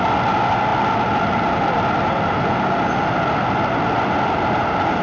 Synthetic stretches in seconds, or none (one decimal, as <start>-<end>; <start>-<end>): none